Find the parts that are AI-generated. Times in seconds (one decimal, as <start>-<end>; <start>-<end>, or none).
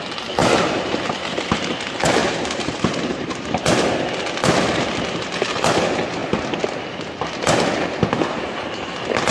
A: 0.4-1.6; 2.2-4.0